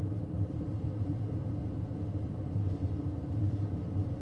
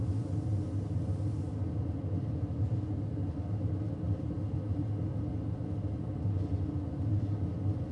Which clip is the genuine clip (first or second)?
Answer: second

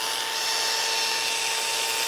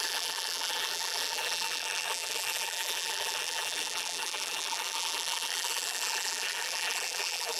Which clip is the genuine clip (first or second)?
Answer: first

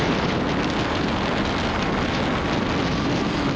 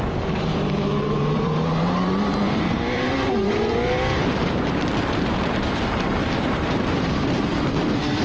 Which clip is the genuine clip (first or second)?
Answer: first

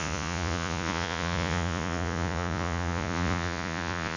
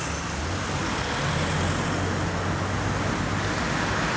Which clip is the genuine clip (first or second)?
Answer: second